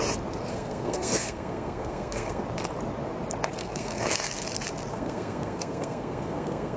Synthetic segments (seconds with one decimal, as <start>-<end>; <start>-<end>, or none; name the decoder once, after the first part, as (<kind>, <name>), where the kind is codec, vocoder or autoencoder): 0.5-2.4 (codec, SNAC); 3.6-4.2; 4.9-6.8